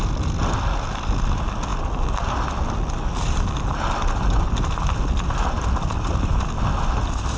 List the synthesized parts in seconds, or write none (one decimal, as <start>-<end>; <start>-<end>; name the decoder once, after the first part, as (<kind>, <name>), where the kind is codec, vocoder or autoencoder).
none